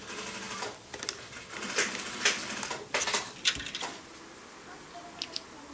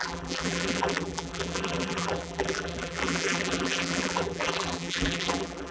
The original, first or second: first